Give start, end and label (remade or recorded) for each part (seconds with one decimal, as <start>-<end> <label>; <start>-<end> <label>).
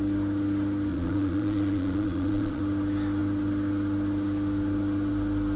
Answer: 0.0-0.9 recorded; 0.9-2.6 remade; 2.6-5.6 recorded